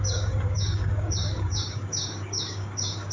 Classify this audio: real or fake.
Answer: fake